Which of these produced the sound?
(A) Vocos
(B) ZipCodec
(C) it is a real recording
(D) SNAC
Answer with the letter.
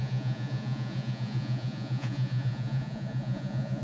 A